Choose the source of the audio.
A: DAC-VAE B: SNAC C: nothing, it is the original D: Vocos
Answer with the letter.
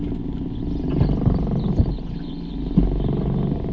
C